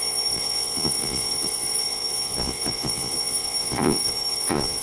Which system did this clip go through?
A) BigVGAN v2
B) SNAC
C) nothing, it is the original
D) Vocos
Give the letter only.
D